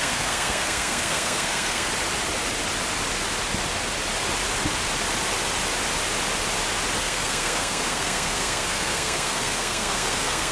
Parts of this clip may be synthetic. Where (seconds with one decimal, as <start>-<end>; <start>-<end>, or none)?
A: 0.0-1.9; 7.0-10.5